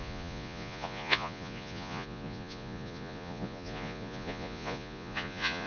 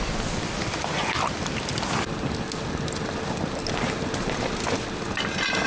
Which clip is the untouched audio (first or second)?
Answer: second